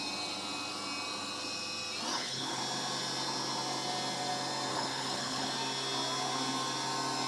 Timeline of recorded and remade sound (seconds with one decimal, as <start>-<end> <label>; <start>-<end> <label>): 0.0-2.1 recorded; 2.1-2.6 remade; 2.6-4.7 recorded; 4.7-5.5 remade; 5.5-7.3 recorded